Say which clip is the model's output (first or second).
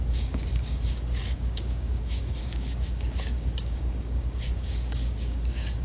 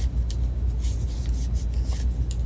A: first